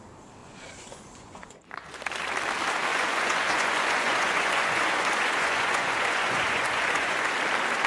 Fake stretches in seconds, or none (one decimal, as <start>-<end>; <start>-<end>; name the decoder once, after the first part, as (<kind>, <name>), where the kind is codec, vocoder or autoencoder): 0.4-2.0 (vocoder, Vocos); 2.9-7.3